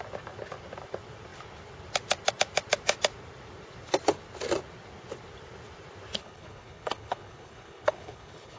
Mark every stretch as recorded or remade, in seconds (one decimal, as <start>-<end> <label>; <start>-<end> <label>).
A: 0.0-6.2 recorded; 6.2-8.6 remade